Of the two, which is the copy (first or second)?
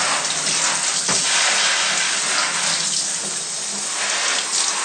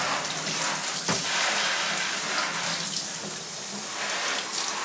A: second